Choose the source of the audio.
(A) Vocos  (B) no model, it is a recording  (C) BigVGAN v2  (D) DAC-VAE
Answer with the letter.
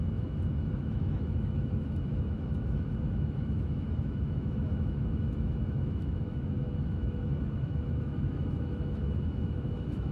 D